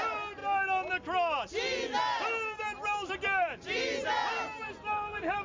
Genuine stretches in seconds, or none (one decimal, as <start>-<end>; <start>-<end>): 0.0-5.4